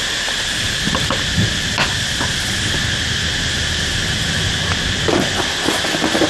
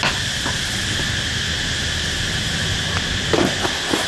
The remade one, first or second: first